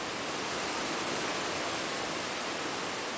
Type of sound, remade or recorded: recorded